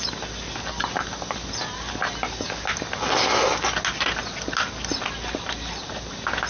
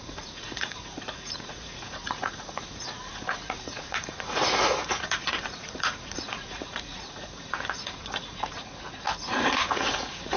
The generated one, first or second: second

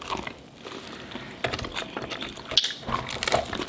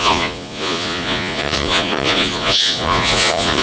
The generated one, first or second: second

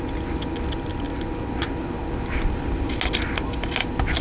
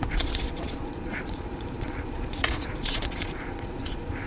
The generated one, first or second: second